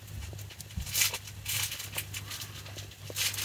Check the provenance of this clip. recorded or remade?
recorded